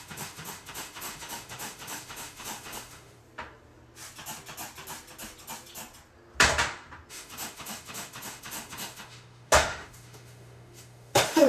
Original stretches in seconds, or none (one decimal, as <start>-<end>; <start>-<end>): 3.2-7.1